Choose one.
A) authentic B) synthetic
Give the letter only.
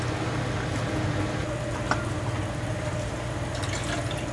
A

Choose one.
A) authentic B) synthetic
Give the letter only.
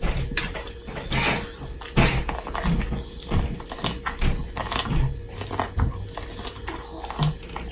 A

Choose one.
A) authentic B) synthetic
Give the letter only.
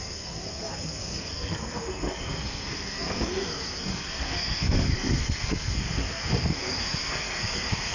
B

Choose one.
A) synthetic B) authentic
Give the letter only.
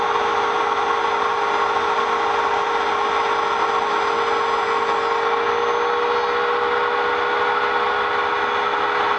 B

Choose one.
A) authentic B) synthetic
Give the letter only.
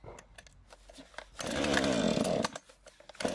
A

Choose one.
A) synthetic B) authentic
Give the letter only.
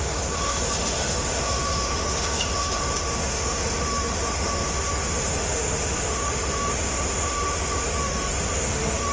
A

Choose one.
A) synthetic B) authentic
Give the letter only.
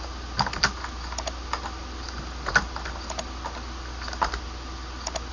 B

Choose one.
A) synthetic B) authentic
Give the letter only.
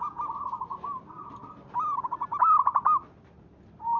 B